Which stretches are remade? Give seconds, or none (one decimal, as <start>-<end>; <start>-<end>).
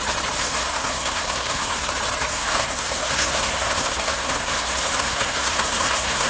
0.4-1.9; 2.3-6.3